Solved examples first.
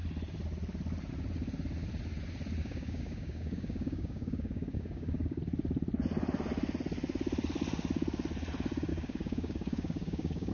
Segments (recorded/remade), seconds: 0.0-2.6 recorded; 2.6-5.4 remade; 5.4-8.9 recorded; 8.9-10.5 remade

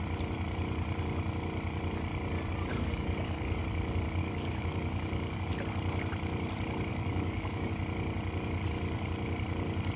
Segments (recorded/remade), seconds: 0.0-2.7 recorded; 2.7-3.6 remade; 3.6-4.2 recorded; 4.2-5.5 remade; 5.5-6.9 recorded; 6.9-7.7 remade; 7.7-10.0 recorded